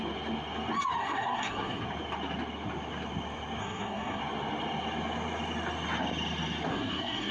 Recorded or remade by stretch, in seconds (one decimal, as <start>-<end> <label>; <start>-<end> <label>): 0.0-1.0 recorded; 1.0-1.8 remade; 1.8-3.6 recorded; 3.6-4.2 remade; 4.2-6.7 recorded; 6.7-7.3 remade